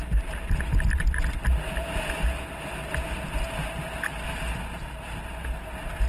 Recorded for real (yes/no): yes